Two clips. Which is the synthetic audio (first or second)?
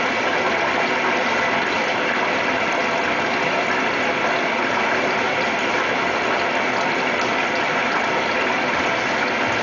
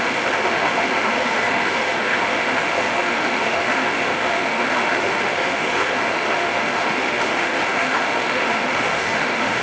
second